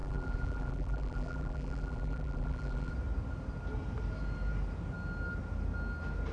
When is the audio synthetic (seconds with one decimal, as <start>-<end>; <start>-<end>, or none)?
0.0-2.9